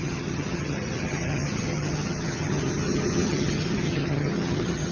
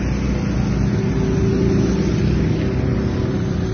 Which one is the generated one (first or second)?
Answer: first